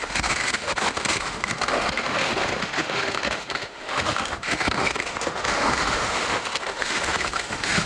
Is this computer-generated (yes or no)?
yes